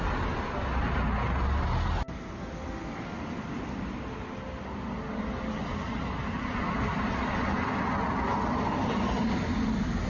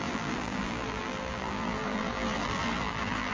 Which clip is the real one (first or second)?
first